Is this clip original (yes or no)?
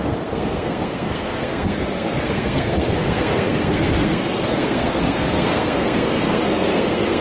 no